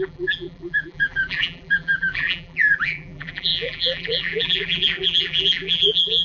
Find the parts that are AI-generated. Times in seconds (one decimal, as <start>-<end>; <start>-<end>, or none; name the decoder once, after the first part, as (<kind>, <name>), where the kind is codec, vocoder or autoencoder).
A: 0.0-6.2 (vocoder, BigVGAN v2)